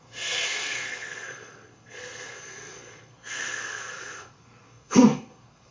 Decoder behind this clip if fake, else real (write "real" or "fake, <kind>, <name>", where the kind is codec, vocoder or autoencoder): fake, codec, SNAC